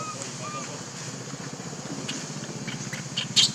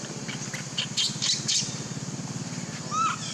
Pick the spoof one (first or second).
second